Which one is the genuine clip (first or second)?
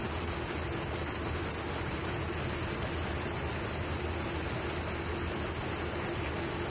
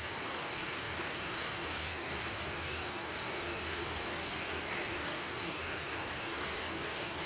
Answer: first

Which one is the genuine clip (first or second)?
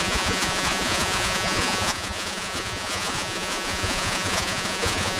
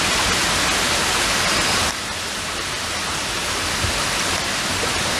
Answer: second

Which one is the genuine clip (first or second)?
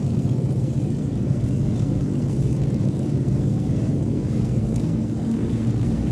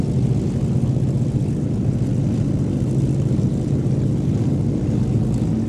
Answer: second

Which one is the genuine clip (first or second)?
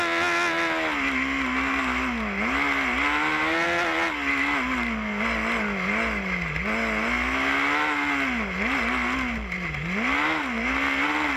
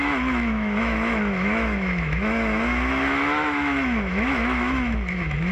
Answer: first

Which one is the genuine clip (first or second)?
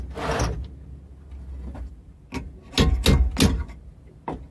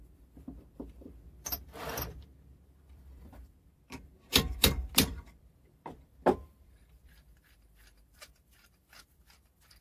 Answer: first